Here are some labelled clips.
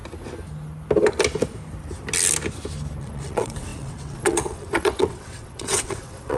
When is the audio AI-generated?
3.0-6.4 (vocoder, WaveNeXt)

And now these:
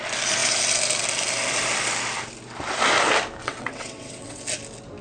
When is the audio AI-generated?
3.4-4.4 (vocoder, WaveNeXt)

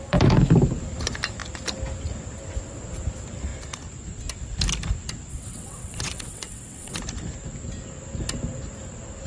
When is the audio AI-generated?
5.3-7.0 (vocoder, WaveNeXt)

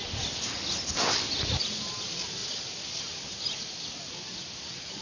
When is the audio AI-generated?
none

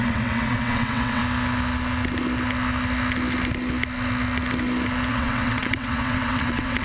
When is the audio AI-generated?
0.0-1.2 (vocoder, WaveNeXt); 5.1-6.8

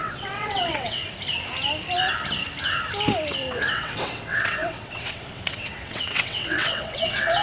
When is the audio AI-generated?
0.0-1.0 (vocoder, WaveNeXt); 3.7-7.4